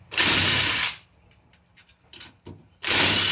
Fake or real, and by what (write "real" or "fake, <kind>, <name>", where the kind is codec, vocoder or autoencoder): real